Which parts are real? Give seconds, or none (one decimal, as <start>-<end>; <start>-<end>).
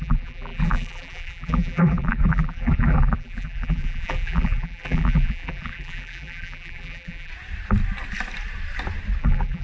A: 7.3-9.2